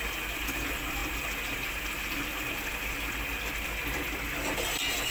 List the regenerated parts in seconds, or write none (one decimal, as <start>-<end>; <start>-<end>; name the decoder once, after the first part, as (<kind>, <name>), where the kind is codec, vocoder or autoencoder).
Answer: none